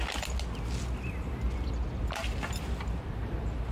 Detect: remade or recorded recorded